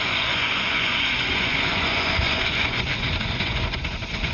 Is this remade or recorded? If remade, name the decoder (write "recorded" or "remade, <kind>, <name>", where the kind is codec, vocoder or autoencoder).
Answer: remade, vocoder, Vocos